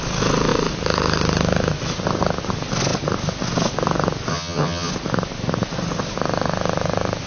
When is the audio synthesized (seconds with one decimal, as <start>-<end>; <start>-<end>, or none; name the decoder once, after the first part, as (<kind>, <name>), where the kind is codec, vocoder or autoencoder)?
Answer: 4.3-4.9 (vocoder, HiFi-GAN)

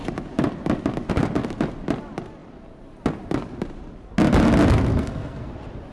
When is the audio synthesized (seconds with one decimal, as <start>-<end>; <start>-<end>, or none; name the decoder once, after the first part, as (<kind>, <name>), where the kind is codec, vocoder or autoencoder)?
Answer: 4.9-5.5 (codec, SNAC)

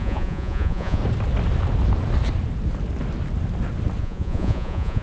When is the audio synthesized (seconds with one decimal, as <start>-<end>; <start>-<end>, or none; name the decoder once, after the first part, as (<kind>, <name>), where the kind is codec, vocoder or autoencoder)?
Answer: 0.0-1.0 (vocoder, Vocos); 4.0-5.0